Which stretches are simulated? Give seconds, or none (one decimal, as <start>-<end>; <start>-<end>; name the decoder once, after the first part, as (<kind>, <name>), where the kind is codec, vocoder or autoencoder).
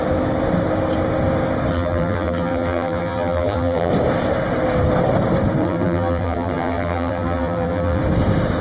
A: 1.7-3.9 (vocoder, BigVGAN v2); 5.6-8.0